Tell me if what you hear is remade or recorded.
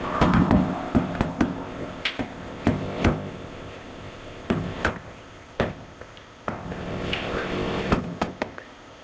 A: remade